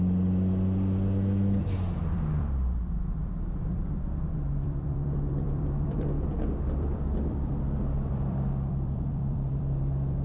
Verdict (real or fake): fake